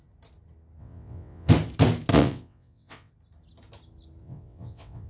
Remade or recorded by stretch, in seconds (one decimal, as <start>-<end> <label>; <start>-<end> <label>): 0.0-0.8 recorded; 0.8-1.5 remade; 1.5-2.1 recorded; 2.1-3.1 remade; 3.1-4.2 recorded; 4.2-5.1 remade